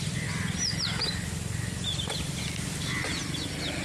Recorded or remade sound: recorded